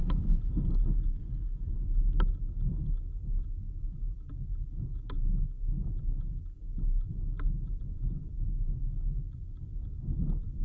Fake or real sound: real